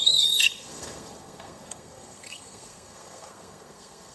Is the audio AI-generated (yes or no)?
yes